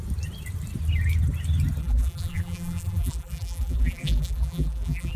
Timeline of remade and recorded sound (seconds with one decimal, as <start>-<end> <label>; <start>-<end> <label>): 0.0-1.8 recorded; 1.8-5.2 remade